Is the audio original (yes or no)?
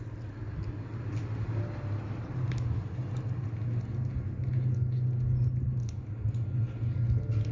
yes